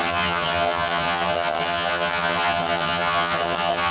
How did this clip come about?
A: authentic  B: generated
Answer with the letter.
B